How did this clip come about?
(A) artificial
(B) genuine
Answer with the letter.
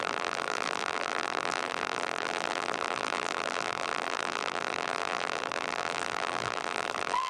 A